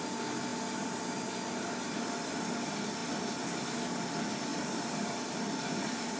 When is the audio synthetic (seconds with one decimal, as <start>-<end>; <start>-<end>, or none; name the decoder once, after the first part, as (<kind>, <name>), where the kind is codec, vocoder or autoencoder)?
4.5-6.2 (vocoder, BigVGAN v2)